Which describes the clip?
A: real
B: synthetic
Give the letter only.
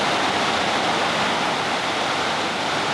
A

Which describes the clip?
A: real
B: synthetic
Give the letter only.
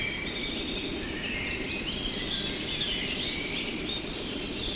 A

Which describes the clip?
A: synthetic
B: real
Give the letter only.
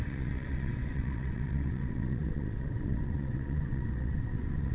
A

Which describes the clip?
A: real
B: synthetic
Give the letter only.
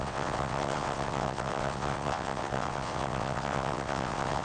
B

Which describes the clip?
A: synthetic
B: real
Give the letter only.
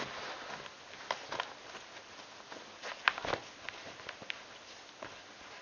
B